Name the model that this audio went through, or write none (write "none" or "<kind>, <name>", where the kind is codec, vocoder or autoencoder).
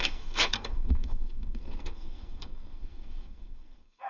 codec, SNAC